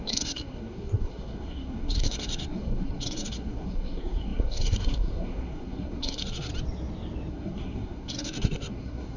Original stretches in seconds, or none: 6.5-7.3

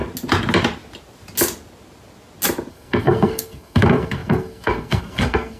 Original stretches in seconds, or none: 0.0-2.7

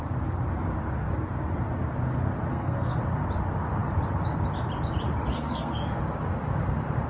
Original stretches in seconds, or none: 0.0-2.5; 3.0-5.3; 6.0-7.1